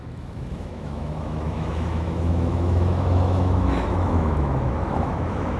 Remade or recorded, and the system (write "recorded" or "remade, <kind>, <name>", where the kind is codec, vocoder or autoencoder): remade, autoencoder, DAC-VAE